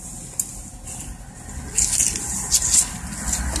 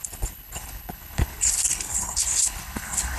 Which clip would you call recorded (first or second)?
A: first